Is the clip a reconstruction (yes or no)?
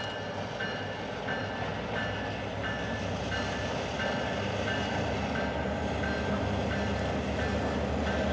no